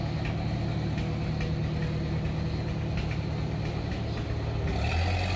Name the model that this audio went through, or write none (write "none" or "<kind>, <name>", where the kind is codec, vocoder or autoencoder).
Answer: none